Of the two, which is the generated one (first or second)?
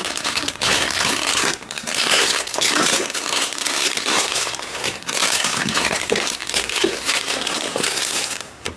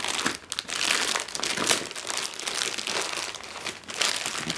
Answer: first